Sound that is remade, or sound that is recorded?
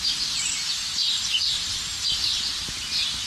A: recorded